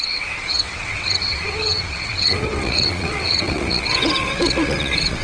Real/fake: fake